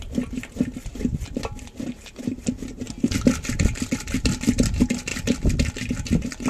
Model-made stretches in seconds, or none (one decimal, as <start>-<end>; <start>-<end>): 0.0-5.1; 5.9-6.5